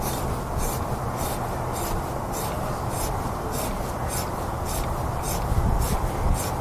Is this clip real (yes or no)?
yes